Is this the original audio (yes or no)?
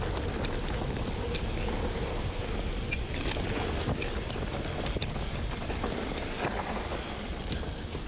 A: yes